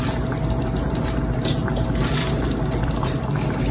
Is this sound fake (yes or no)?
yes